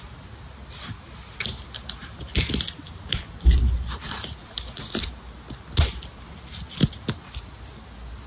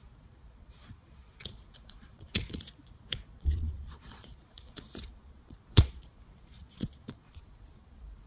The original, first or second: first